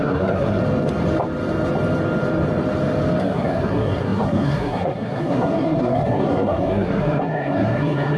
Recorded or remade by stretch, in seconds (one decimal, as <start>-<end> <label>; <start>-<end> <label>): 0.0-0.6 remade; 0.6-3.2 recorded; 3.2-8.2 remade